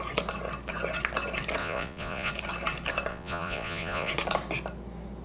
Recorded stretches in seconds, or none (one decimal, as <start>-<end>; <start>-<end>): 0.0-1.6; 2.3-3.1; 4.1-5.2